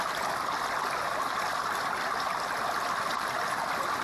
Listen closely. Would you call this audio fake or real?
real